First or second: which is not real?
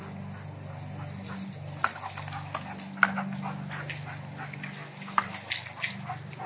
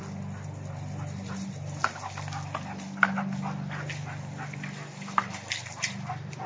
second